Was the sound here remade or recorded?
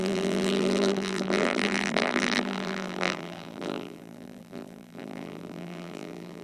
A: remade